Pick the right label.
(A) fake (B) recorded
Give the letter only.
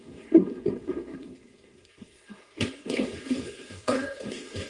A